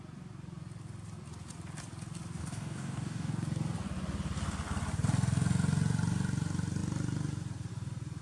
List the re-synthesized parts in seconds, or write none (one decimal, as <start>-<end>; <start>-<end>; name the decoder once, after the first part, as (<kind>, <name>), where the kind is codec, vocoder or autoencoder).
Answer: 2.4-3.3 (codec, DAC)